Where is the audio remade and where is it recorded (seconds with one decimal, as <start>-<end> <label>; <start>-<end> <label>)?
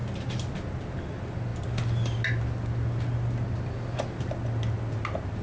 0.0-5.4 recorded